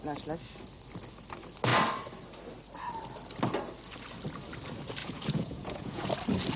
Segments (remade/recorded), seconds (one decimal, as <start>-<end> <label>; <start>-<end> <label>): 0.0-5.0 recorded; 5.0-6.1 remade; 6.1-6.6 recorded